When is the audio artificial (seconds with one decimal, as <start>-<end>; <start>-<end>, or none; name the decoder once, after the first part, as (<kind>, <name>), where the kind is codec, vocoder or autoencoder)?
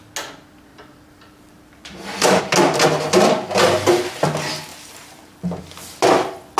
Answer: 0.7-2.4 (vocoder, BigVGAN v2); 4.7-5.6